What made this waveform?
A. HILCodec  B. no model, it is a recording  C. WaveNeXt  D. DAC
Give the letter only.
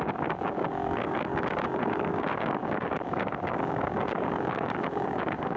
D